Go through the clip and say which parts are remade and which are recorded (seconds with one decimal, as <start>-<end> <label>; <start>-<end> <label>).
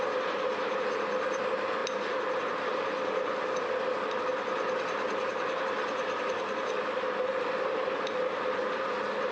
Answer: 0.0-9.3 recorded